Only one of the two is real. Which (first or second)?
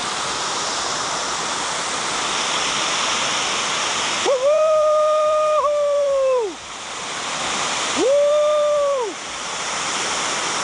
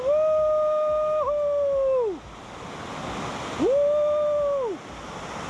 second